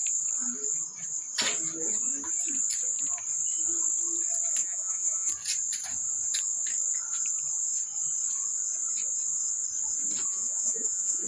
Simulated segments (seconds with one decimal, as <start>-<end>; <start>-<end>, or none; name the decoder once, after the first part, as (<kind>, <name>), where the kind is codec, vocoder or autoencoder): 4.6-5.3 (vocoder, Vocos); 10.3-11.3